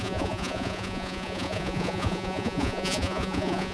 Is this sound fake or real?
fake